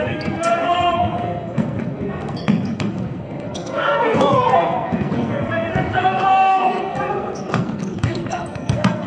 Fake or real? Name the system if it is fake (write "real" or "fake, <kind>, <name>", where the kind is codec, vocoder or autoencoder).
fake, codec, SNAC